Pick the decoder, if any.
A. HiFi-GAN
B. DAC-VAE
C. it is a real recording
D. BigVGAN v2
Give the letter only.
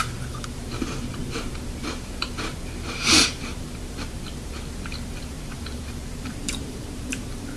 D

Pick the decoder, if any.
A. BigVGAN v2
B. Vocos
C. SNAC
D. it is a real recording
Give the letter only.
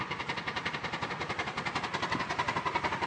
A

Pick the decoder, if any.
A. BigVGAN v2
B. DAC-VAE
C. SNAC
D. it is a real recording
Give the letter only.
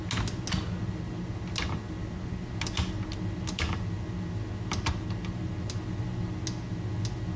D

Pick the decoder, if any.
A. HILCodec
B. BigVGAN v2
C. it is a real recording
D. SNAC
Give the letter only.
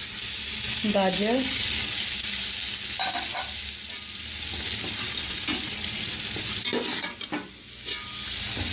C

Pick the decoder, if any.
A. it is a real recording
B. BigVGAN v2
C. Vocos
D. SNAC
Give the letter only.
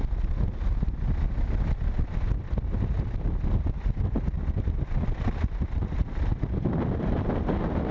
A